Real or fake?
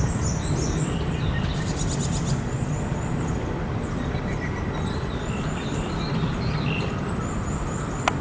real